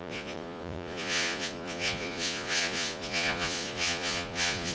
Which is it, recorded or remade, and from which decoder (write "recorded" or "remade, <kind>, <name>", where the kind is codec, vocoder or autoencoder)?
remade, vocoder, Vocos